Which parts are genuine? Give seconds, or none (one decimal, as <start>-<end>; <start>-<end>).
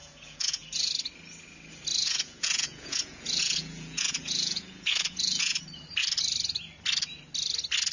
0.9-1.9; 5.6-7.9